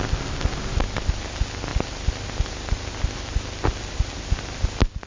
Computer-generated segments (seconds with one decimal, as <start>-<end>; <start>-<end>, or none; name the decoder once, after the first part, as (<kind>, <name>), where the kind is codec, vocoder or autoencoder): none